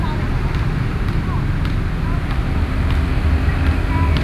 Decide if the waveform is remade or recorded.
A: recorded